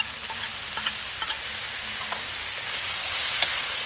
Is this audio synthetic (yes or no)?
no